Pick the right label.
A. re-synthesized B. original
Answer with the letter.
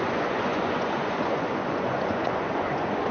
A